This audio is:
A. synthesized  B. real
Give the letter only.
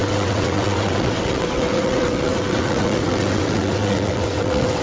A